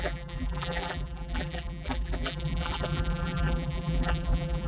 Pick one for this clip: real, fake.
fake